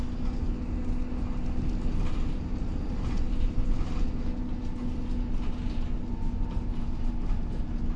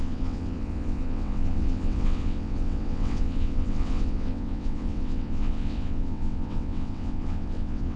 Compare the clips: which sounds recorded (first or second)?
first